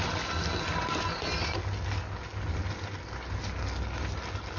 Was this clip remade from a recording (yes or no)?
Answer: no